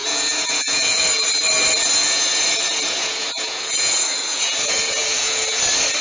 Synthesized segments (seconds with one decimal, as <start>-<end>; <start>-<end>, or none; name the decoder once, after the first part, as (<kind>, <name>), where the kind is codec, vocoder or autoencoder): 0.0-1.0 (vocoder, Vocos); 2.0-5.6